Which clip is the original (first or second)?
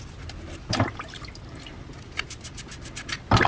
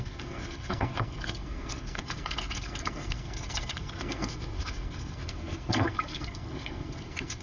first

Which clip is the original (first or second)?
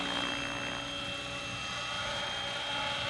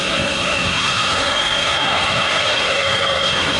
first